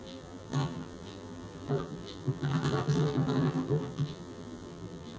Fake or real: fake